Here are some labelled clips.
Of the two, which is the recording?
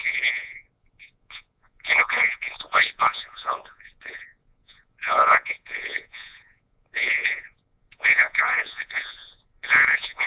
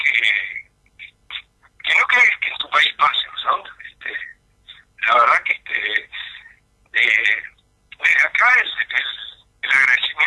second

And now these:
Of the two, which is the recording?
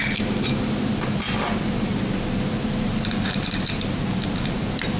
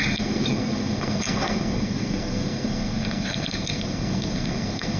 first